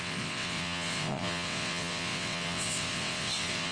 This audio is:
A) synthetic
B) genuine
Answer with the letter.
A